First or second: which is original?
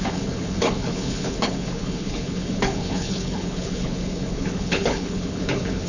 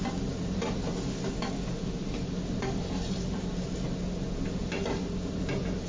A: second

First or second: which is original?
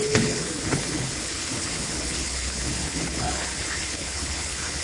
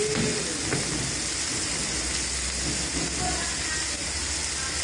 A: second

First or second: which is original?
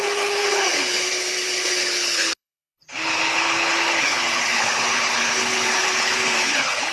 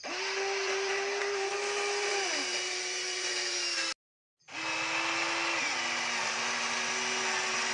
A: second